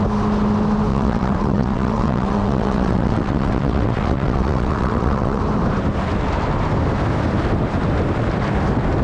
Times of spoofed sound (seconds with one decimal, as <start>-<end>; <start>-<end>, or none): 0.9-5.4